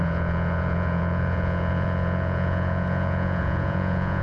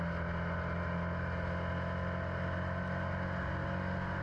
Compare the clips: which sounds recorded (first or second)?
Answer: second